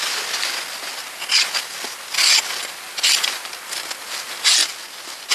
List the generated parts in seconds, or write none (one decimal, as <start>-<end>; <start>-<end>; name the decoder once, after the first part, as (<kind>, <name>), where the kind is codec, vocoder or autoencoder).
4.6-5.3 (vocoder, BigVGAN v2)